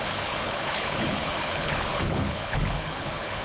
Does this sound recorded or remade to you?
remade